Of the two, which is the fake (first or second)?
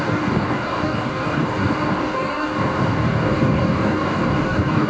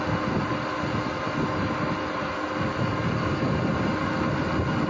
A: first